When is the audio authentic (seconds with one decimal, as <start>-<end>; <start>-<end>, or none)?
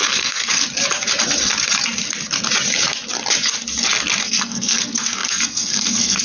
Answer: 0.5-4.2